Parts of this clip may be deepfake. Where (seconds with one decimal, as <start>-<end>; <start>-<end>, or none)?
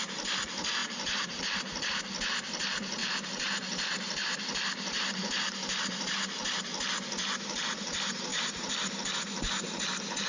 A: 0.8-1.4; 3.0-6.6; 8.3-8.9